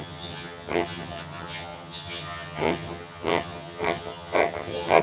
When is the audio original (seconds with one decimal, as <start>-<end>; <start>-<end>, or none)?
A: none